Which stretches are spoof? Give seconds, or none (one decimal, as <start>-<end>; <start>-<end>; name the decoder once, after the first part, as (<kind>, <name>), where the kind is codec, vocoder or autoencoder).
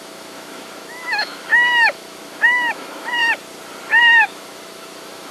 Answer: 0.0-3.2 (autoencoder, DAC-VAE); 4.0-5.3